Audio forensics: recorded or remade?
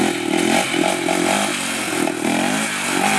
recorded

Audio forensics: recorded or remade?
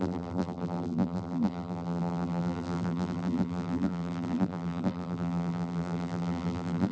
remade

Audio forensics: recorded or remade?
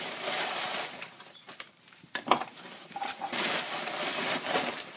remade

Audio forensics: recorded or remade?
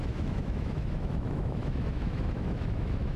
remade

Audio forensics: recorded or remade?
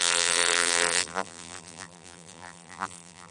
remade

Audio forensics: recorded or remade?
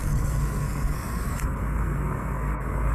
remade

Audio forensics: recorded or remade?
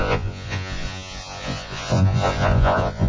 remade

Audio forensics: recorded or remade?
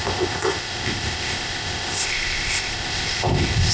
remade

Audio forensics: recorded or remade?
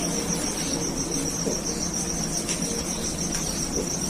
recorded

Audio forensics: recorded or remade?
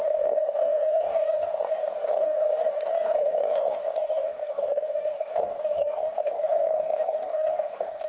remade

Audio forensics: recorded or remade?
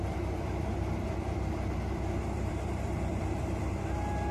remade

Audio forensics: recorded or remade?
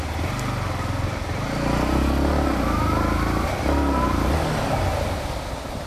recorded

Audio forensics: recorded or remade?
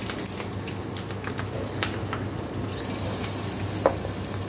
recorded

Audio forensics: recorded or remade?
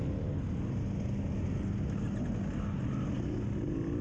recorded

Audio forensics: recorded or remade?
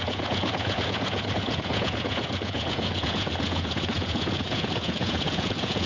remade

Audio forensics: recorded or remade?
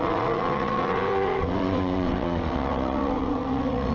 remade